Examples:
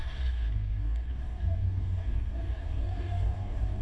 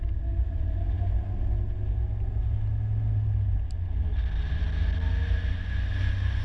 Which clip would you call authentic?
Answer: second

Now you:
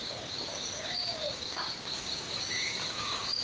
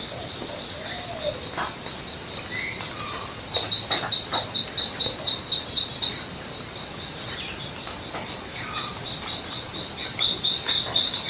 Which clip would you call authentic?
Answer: second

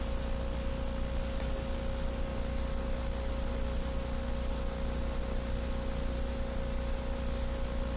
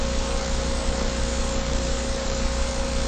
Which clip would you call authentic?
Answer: first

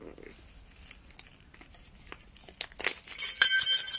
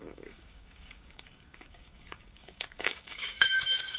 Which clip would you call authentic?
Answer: first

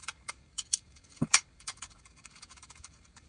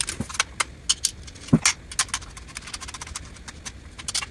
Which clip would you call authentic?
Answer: second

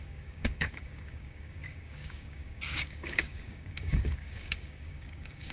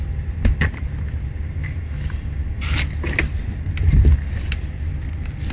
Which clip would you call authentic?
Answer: second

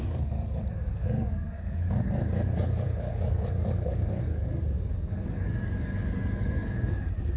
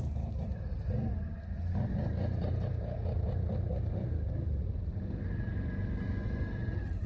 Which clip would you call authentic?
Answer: second